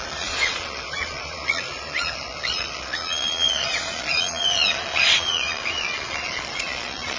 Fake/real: fake